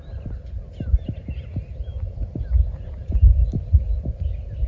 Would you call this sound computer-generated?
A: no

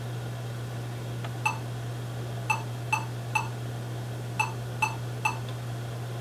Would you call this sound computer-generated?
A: no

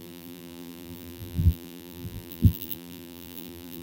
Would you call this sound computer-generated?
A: yes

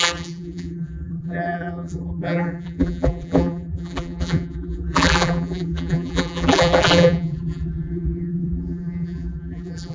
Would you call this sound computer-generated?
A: yes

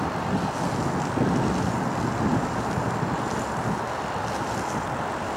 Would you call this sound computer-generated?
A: no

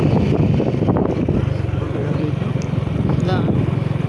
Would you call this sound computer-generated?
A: yes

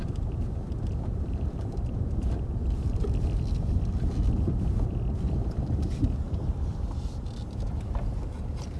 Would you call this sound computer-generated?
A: yes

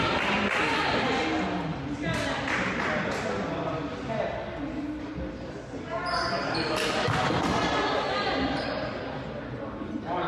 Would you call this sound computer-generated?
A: no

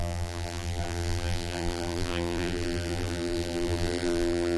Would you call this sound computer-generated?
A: yes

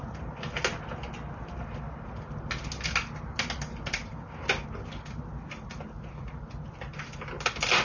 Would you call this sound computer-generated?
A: no